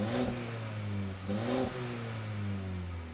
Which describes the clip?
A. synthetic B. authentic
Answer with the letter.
B